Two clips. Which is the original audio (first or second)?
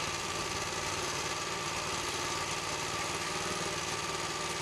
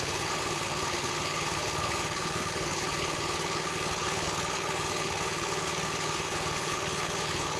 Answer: first